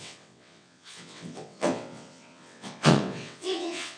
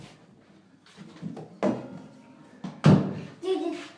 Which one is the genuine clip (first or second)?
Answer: second